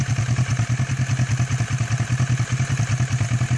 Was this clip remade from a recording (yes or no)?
no